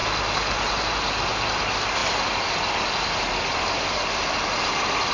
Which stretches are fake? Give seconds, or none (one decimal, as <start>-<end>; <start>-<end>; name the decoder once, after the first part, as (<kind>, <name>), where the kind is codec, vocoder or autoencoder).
none

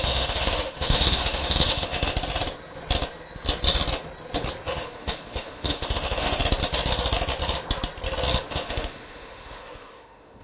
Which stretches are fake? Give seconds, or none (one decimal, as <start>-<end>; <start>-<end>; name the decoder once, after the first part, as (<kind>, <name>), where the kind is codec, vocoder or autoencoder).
0.0-2.1 (autoencoder, DAC-VAE); 4.8-6.4; 8.5-10.4

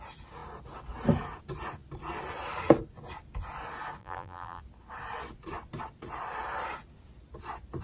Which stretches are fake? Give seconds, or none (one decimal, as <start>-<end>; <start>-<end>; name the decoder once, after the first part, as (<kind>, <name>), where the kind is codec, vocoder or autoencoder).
4.0-4.6 (vocoder, BigVGAN v2)

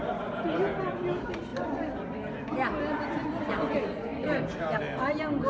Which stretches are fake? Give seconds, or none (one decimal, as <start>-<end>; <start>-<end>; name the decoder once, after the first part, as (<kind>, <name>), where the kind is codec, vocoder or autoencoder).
none

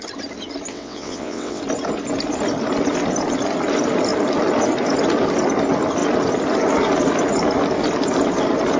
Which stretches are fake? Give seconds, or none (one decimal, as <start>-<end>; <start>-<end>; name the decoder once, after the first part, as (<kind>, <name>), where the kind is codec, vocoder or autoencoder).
0.7-1.6 (vocoder, WaveNeXt)

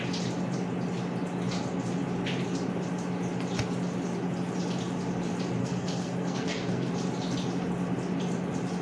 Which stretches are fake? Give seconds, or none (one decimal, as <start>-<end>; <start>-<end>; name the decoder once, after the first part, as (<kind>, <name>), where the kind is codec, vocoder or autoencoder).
5.6-6.9 (codec, SNAC)

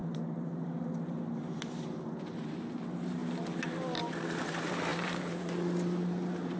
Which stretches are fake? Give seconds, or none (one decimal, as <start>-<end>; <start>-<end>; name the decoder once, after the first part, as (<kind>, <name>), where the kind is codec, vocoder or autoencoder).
0.0-3.2 (vocoder, BigVGAN v2); 4.4-6.6

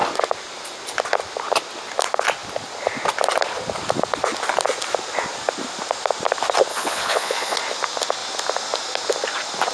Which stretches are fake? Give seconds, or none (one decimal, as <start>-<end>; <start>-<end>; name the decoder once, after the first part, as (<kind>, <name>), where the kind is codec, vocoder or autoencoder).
6.7-7.6 (vocoder, Vocos)